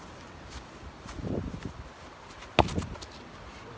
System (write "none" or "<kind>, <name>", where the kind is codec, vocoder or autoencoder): none